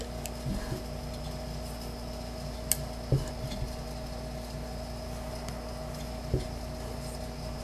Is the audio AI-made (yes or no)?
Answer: no